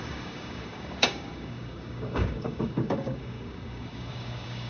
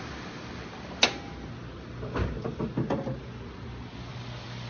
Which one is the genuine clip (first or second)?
second